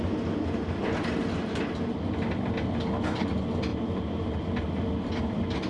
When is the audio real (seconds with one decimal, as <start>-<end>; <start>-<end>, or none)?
0.0-3.7; 4.4-5.7